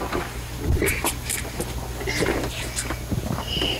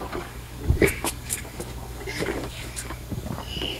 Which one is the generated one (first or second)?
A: second